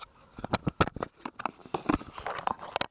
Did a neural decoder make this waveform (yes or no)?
no